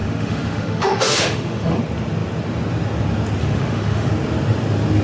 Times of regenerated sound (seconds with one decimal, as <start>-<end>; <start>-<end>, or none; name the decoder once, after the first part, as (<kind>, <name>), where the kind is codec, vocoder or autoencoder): 0.0-1.8 (autoencoder, DAC-VAE); 3.4-4.1